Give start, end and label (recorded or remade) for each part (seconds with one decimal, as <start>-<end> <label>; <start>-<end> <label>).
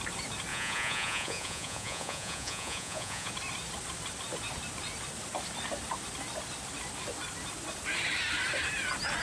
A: 0.0-0.5 recorded; 0.5-3.3 remade; 3.3-9.2 recorded